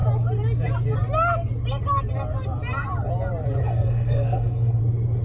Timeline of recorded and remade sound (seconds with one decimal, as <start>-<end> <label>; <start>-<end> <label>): 0.0-3.6 recorded; 3.6-4.8 remade; 4.8-5.2 recorded